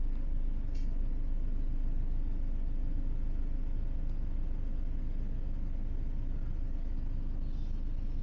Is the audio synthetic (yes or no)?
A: no